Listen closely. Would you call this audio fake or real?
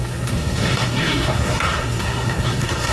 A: fake